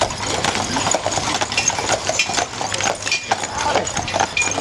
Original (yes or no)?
no